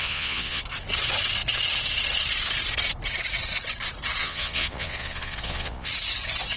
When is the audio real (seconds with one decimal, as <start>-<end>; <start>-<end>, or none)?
0.6-4.2; 5.9-6.6